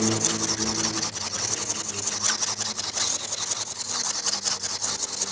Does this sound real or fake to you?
real